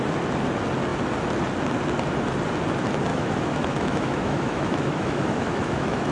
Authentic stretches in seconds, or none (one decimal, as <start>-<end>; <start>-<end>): 0.0-3.1